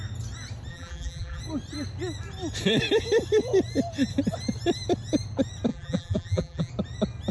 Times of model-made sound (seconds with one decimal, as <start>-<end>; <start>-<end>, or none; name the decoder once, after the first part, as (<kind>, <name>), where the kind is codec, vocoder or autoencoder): 0.7-1.4 (vocoder, BigVGAN v2); 5.7-6.7